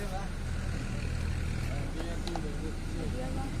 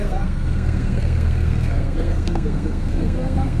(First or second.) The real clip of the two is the first